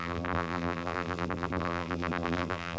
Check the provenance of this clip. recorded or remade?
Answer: remade